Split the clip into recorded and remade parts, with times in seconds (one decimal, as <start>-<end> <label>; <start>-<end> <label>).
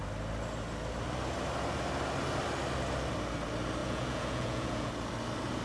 0.0-3.8 recorded; 3.8-4.9 remade; 4.9-5.6 recorded